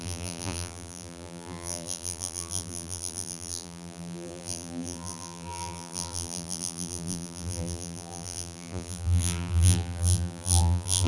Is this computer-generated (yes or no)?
yes